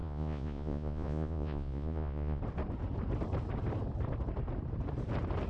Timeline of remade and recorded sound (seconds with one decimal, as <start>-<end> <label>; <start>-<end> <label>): 0.0-2.4 remade; 2.4-5.5 recorded

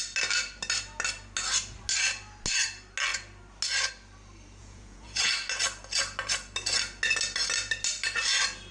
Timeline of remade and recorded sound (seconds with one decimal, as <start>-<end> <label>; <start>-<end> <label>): 0.0-4.6 recorded; 4.6-5.3 remade; 5.3-8.7 recorded

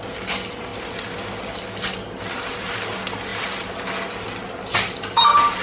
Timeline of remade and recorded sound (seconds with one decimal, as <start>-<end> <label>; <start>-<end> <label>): 0.0-5.6 recorded

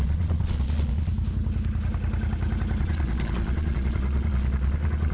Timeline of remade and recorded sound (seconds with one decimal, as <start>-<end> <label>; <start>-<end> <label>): 0.0-1.1 remade; 1.1-2.8 recorded; 2.8-5.1 remade

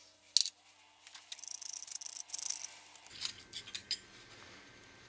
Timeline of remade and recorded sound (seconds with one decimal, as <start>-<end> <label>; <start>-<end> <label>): 0.0-5.1 recorded

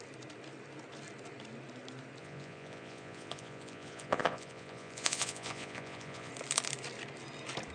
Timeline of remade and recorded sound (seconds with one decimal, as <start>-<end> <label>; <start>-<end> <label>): 0.0-2.2 recorded; 2.2-6.3 remade; 6.3-7.7 recorded

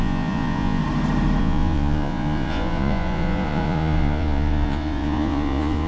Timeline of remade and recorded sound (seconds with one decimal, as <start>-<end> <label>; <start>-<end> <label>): 0.0-0.8 remade; 0.8-1.4 recorded; 1.4-5.9 remade

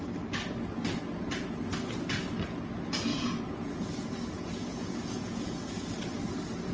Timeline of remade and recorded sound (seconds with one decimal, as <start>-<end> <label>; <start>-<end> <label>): 0.0-3.1 recorded; 3.1-5.9 remade; 5.9-6.7 recorded